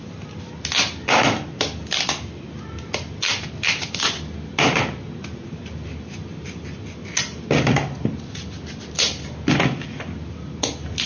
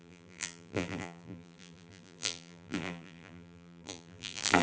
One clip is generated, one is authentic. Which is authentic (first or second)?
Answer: first